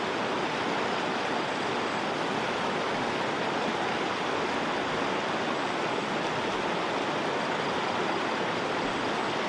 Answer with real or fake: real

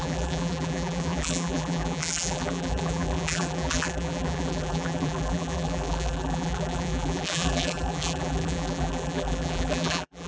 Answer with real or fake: fake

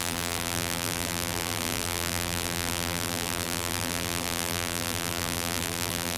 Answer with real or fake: fake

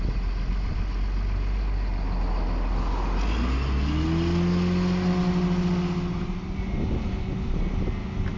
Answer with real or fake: real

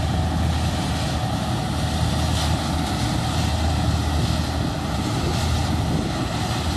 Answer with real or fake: real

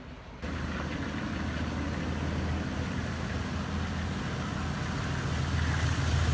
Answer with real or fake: real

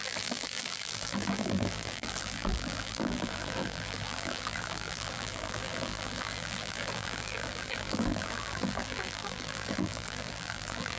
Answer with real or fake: fake